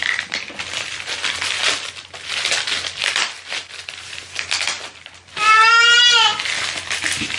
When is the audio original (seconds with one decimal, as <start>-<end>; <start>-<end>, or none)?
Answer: 1.6-5.7; 6.3-6.9